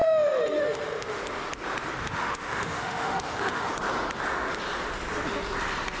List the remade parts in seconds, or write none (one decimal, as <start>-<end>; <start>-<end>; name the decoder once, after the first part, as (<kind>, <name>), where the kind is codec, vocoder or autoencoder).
0.0-1.2 (autoencoder, DAC-VAE); 2.0-3.7